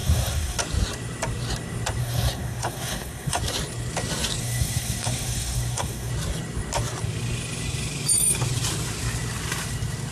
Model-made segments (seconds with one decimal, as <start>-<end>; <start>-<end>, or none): 0.0-0.6; 2.0-3.4; 4.4-6.1